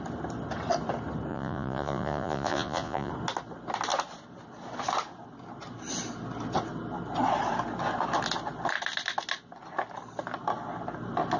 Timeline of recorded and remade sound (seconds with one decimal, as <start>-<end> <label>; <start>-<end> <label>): 0.0-1.3 recorded; 1.3-3.1 remade; 3.1-11.4 recorded